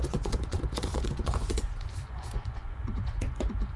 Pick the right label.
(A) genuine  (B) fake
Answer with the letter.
B